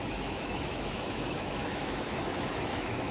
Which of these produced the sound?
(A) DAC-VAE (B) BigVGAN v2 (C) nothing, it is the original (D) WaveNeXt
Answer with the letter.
A